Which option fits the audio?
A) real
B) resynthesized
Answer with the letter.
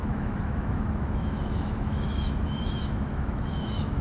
B